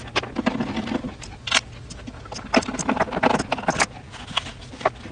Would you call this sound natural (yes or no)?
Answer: yes